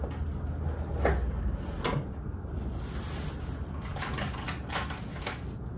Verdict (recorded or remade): recorded